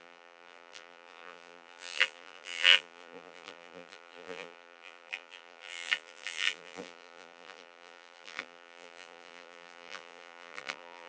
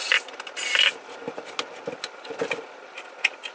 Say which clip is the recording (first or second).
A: second